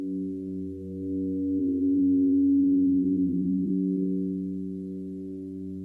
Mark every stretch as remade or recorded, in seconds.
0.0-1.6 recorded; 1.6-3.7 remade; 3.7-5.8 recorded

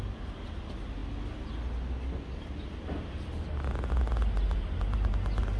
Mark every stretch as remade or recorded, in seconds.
0.0-5.6 recorded